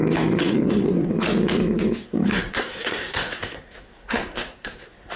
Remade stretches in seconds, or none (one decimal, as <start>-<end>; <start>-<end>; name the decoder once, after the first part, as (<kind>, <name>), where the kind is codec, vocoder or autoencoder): 0.4-1.1 (codec, SNAC); 2.0-5.2